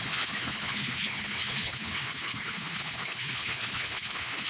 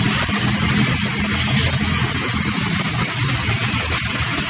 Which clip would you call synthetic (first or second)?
first